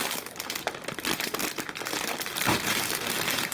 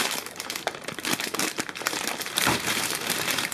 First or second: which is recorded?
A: first